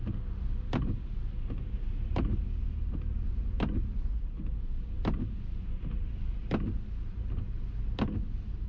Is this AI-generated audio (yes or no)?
no